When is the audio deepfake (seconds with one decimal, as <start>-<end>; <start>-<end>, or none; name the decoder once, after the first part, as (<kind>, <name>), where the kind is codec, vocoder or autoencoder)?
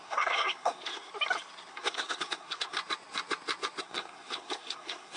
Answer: 0.0-1.1 (codec, SNAC); 1.7-2.8; 3.8-5.2